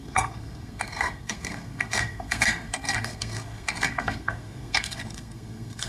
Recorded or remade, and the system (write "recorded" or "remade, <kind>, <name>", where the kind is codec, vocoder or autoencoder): remade, codec, SNAC